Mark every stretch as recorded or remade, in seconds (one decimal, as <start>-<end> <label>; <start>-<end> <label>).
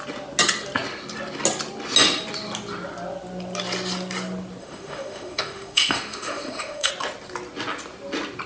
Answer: 0.0-4.6 recorded; 4.6-6.9 remade; 6.9-8.5 recorded